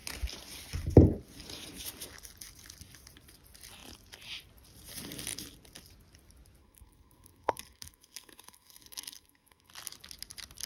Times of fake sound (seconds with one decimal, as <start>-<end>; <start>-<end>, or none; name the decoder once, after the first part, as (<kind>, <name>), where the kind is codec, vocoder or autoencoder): 6.6-9.7 (codec, SNAC)